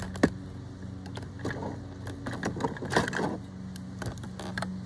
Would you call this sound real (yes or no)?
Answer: yes